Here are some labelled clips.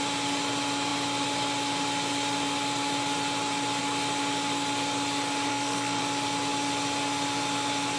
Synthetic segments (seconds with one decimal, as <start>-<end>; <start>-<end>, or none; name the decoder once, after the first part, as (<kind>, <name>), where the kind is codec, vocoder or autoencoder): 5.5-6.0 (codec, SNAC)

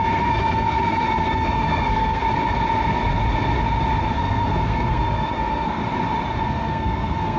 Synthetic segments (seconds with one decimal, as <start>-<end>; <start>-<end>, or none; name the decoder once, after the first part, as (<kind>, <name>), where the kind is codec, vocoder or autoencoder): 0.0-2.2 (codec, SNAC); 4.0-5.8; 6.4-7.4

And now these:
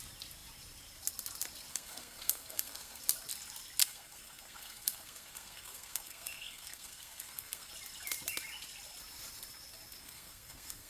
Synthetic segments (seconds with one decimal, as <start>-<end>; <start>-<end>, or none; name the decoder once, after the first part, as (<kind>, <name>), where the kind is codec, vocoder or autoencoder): 1.7-3.0 (codec, SNAC); 3.8-7.7; 10.0-10.9

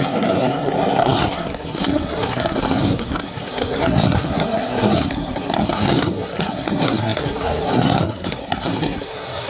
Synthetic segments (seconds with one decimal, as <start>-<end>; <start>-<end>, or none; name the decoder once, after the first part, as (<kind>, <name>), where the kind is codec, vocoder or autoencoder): 0.0-9.5 (codec, SNAC)